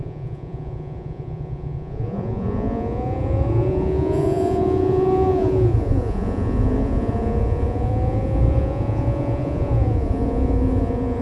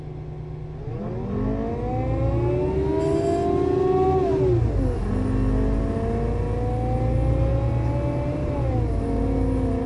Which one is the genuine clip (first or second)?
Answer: second